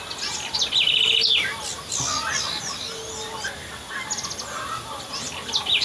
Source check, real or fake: real